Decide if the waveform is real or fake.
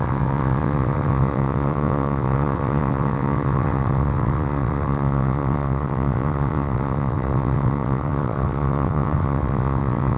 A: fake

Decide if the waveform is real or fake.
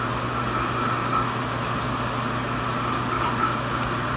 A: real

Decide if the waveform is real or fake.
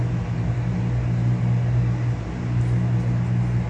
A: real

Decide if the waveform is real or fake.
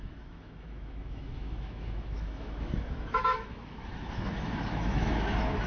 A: fake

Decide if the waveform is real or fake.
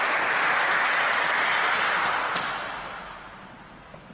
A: real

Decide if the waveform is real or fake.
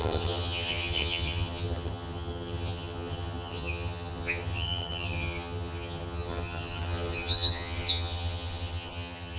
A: fake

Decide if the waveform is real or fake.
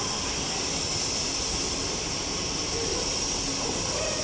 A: fake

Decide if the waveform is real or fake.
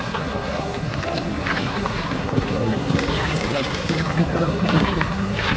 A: fake